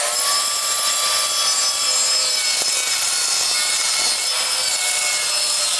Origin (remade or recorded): recorded